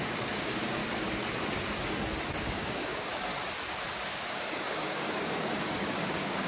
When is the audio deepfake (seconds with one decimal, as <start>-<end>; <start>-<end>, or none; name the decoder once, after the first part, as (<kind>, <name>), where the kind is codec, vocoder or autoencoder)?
0.0-0.8 (codec, DAC); 2.4-3.3; 4.3-6.5